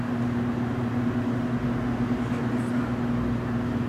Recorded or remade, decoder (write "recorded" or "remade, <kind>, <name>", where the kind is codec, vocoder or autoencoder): recorded